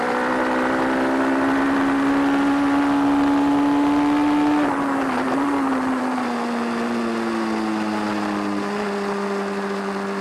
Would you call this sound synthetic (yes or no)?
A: no